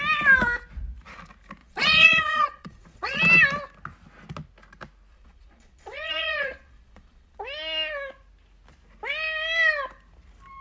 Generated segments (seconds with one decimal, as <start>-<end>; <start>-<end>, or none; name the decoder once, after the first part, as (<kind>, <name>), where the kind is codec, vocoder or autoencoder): 1.6-3.2 (vocoder, Vocos); 5.1-7.4